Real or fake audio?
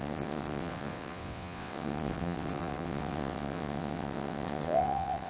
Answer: fake